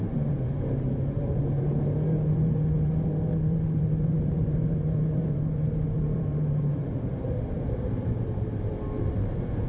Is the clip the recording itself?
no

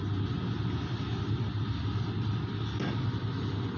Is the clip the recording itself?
yes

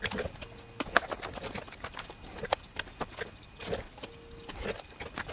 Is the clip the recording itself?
yes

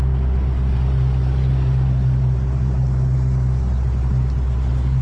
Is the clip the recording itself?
yes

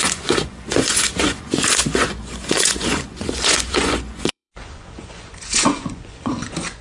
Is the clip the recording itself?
no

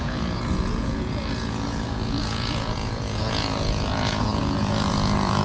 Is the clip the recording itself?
no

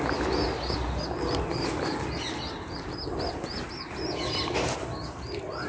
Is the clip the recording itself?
yes